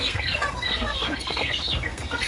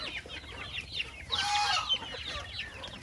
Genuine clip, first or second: second